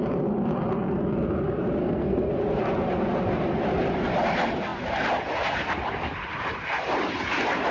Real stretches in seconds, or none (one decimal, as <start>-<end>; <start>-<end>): 0.0-1.8; 2.3-7.7